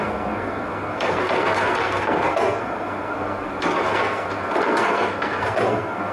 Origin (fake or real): fake